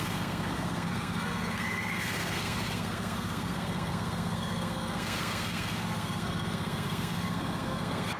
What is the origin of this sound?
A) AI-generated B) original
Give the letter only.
A